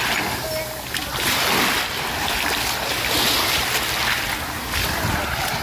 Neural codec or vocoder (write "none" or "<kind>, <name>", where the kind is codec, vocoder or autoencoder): none